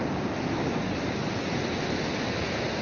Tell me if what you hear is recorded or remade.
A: recorded